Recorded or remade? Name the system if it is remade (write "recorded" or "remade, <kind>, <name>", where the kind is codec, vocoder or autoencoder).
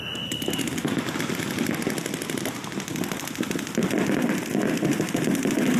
recorded